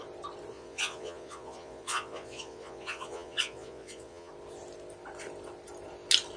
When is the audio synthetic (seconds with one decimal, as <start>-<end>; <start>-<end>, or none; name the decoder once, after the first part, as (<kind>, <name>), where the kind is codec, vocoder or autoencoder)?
0.5-4.3 (vocoder, Vocos)